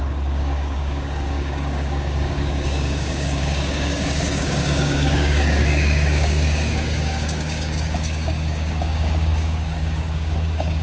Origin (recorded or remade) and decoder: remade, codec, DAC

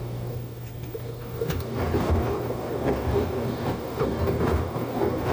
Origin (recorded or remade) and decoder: remade, codec, DAC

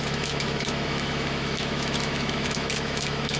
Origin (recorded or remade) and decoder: remade, autoencoder, DAC-VAE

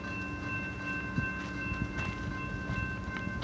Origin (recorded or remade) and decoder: recorded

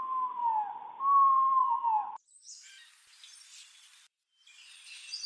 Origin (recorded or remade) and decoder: recorded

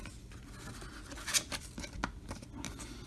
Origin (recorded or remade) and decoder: recorded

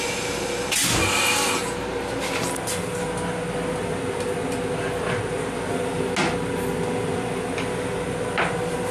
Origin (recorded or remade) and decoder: recorded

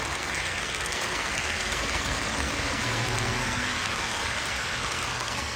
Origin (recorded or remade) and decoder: remade, codec, SNAC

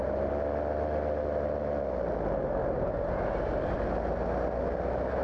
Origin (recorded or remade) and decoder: recorded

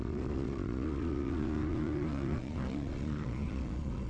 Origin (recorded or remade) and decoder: remade, vocoder, Vocos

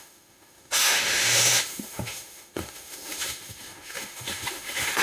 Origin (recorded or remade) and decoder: remade, autoencoder, DAC-VAE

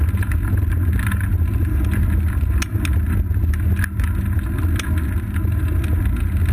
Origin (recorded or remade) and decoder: recorded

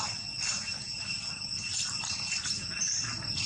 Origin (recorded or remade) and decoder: recorded